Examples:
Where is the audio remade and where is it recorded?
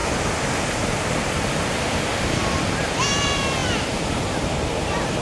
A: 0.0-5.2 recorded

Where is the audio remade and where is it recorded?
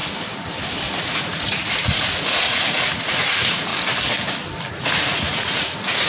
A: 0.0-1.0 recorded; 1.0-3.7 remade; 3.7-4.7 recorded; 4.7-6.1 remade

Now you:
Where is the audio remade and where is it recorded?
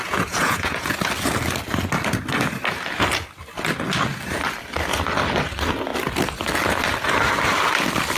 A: 0.0-0.9 remade; 0.9-8.2 recorded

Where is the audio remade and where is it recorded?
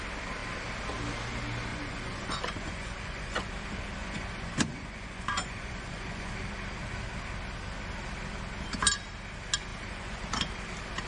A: 0.0-1.7 recorded; 1.7-3.5 remade; 3.5-4.0 recorded; 4.0-6.3 remade; 6.3-9.7 recorded; 9.7-10.5 remade; 10.5-11.1 recorded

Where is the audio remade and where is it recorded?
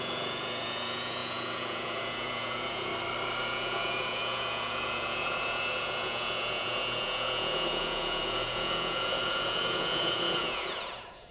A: 0.0-2.9 remade; 2.9-3.4 recorded; 3.4-11.3 remade